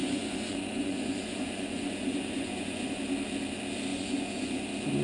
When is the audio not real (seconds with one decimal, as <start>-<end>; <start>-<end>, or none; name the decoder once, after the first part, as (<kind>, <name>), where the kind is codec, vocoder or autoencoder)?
0.0-3.0 (vocoder, Vocos); 3.9-4.6